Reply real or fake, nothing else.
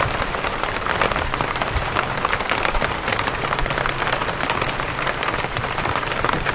fake